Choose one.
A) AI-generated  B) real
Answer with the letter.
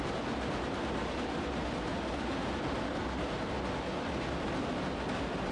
B